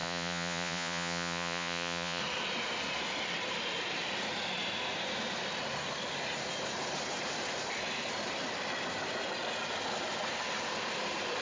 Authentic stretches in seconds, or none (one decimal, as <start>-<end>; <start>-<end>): 2.2-11.4